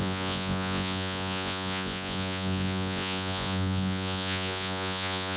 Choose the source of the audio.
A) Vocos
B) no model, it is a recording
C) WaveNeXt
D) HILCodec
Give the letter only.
A